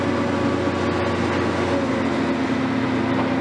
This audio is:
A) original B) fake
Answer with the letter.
A